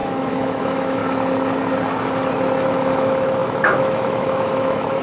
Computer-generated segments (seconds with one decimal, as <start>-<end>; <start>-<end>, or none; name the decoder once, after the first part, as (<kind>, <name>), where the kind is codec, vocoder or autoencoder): 0.0-1.0 (autoencoder, DAC-VAE); 2.7-5.0